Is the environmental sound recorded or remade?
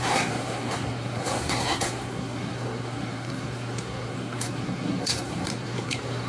remade